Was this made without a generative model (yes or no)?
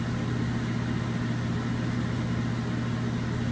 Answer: yes